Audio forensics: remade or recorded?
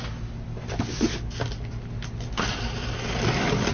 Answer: recorded